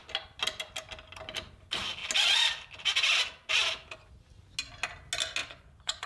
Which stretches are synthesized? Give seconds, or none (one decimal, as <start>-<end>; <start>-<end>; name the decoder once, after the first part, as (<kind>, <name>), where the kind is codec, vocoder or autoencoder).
5.4-6.1 (vocoder, Vocos)

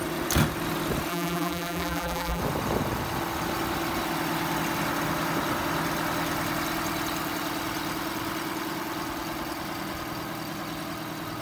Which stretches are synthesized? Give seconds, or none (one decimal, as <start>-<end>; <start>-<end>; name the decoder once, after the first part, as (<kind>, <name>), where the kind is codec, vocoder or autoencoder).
1.1-2.4 (vocoder, BigVGAN v2)

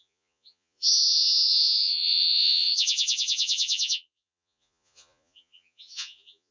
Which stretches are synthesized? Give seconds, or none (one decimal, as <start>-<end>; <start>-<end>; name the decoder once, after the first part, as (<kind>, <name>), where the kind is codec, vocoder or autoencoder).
0.0-6.5 (vocoder, Vocos)

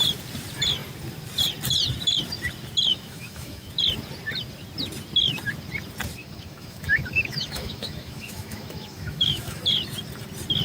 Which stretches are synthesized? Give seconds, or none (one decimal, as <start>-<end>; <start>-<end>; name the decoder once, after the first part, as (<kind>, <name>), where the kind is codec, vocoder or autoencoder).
2.9-3.7 (autoencoder, DAC-VAE); 6.2-9.6

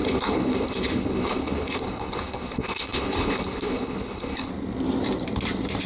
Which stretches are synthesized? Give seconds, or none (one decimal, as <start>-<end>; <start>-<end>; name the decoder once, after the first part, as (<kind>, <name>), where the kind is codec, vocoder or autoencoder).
0.0-4.5 (codec, HILCodec)

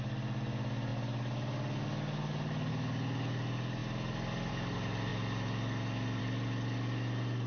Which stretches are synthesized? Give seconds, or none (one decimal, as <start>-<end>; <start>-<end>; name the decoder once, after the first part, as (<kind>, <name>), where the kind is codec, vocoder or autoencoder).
none

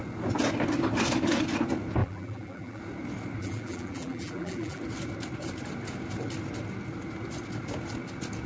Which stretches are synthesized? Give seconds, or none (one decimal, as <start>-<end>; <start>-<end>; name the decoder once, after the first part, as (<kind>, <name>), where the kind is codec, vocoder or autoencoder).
2.0-2.8 (vocoder, BigVGAN v2); 3.4-4.8

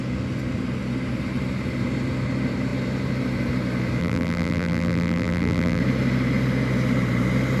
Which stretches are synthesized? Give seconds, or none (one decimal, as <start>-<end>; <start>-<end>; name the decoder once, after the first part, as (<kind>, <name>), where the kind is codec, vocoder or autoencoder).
4.0-5.8 (vocoder, BigVGAN v2)